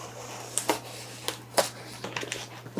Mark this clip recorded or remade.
recorded